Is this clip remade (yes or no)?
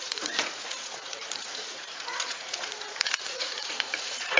yes